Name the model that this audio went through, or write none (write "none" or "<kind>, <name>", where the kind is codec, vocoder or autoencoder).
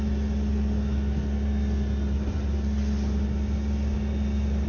none